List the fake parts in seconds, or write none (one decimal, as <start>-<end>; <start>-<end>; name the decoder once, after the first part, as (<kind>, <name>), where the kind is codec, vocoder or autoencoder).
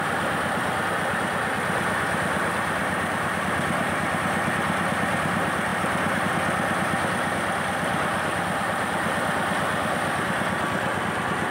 5.7-6.2 (vocoder, BigVGAN v2)